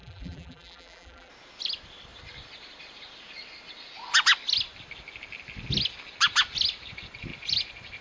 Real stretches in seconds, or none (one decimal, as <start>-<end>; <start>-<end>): 1.3-8.0

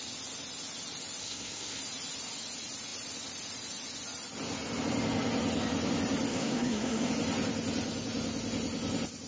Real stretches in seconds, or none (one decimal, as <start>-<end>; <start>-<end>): 0.0-1.2; 1.8-6.3; 7.1-9.3

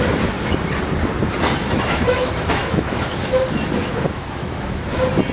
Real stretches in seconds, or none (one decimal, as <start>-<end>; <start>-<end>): 0.0-1.6; 4.8-5.3

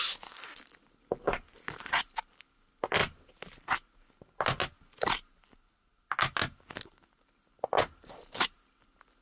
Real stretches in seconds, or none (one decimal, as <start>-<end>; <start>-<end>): 0.0-9.2